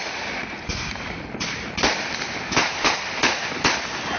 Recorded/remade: recorded